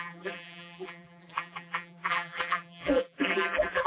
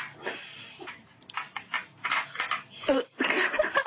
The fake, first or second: first